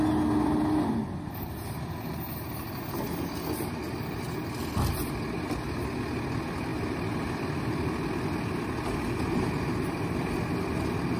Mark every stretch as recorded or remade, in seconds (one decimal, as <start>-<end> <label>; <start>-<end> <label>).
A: 0.0-11.2 recorded